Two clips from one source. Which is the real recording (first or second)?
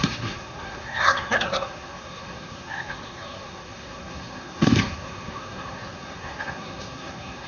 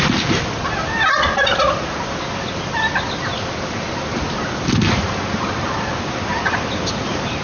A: second